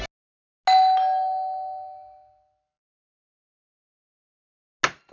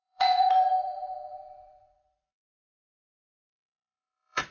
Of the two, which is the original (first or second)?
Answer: first